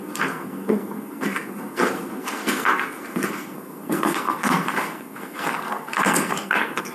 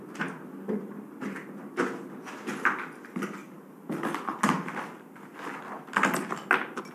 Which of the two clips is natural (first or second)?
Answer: second